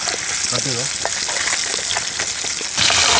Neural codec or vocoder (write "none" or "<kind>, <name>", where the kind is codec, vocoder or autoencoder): none